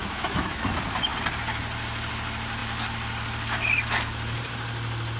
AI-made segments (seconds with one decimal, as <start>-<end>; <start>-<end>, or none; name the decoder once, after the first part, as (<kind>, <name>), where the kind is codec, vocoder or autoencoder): 0.0-0.6 (autoencoder, DAC-VAE)